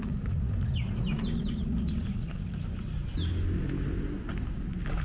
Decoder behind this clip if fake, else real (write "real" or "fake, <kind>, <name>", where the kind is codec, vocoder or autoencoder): real